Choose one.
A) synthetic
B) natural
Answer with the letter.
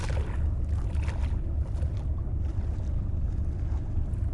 B